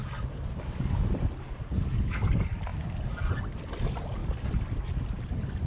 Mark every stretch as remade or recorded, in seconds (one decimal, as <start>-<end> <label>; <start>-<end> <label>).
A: 0.0-5.7 recorded